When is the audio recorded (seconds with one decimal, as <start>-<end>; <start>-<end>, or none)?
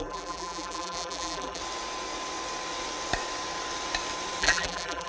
1.6-4.4